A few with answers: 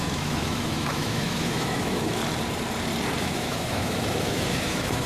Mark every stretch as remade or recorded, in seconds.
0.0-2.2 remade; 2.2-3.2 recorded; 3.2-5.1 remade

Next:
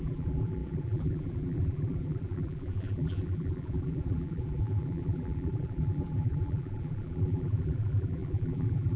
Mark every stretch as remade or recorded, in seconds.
0.0-9.0 remade

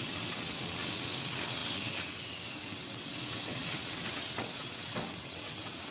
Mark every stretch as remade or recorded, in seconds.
0.0-5.9 remade

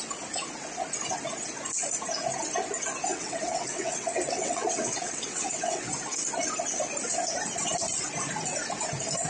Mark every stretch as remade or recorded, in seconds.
0.0-3.1 recorded; 3.1-5.9 remade; 5.9-9.3 recorded

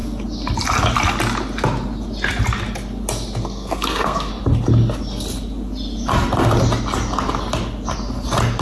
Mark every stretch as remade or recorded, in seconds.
0.0-3.4 recorded; 3.4-4.3 remade; 4.3-8.6 recorded

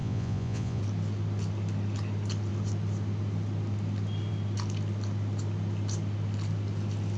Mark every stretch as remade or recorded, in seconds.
0.0-0.8 remade; 0.8-7.2 recorded